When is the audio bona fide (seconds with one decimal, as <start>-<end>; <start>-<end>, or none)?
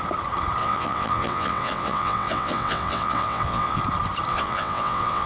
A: 0.0-0.6; 3.8-4.3